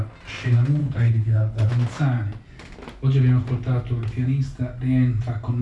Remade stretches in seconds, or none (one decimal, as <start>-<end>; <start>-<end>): 0.8-1.7